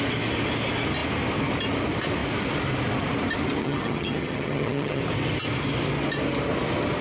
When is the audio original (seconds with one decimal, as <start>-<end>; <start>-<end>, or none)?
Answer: 0.0-3.6; 5.0-7.0